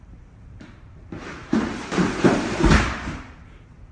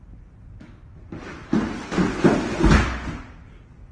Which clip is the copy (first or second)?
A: first